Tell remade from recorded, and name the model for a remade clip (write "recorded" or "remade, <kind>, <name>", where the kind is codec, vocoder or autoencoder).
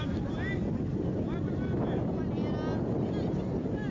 recorded